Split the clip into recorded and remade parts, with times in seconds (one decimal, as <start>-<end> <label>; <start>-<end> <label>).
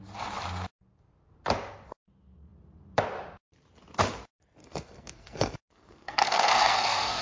0.0-4.6 recorded; 4.6-7.2 remade